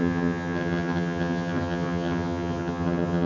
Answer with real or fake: fake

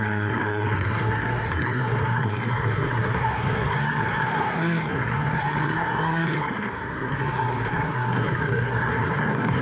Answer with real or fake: fake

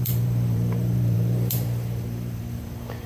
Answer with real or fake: fake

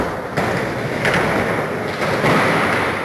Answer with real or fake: real